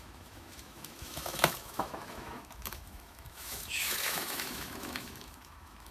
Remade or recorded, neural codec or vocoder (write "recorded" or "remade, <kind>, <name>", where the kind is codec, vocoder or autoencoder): remade, autoencoder, DAC-VAE